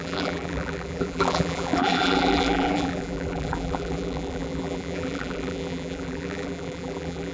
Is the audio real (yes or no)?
no